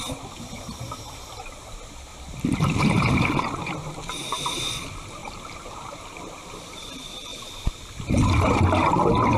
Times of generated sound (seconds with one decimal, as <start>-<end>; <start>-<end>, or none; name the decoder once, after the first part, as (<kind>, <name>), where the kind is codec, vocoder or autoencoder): 2.1-4.4 (vocoder, BigVGAN v2); 5.2-6.8

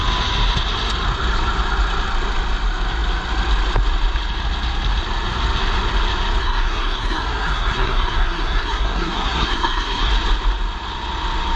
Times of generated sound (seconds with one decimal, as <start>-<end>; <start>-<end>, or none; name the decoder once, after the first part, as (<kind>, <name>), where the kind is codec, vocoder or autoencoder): 6.4-10.1 (codec, SNAC)

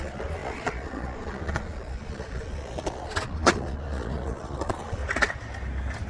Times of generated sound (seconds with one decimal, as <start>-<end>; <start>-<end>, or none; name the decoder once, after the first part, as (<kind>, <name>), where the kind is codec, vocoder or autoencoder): 0.0-5.0 (vocoder, Vocos)